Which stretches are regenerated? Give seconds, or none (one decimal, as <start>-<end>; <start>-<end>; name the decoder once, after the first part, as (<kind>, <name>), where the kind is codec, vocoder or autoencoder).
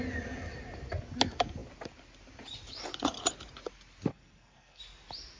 4.1-4.8 (codec, SNAC)